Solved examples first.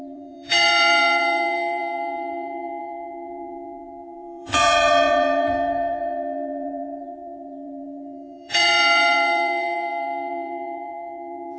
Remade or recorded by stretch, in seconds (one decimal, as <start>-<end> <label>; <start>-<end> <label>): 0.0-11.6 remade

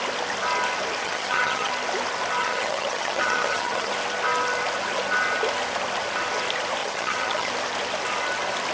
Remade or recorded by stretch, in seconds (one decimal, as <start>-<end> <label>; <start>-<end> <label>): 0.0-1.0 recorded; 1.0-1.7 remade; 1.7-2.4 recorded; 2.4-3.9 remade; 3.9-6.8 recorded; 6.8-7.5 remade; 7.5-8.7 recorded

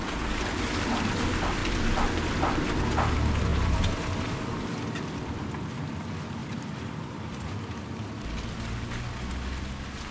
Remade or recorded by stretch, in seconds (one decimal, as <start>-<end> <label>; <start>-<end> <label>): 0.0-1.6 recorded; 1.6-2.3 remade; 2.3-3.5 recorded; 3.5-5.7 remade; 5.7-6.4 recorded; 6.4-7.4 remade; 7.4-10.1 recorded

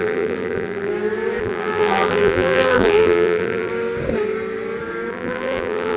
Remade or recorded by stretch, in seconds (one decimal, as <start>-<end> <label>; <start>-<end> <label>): 0.0-0.9 remade; 0.9-1.4 recorded; 1.4-3.7 remade; 3.7-5.1 recorded; 5.1-6.0 remade